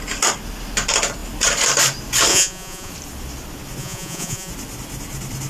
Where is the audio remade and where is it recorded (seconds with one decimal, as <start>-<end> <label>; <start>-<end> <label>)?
0.0-2.3 recorded; 2.3-2.9 remade; 2.9-3.8 recorded; 3.8-4.5 remade; 4.5-5.5 recorded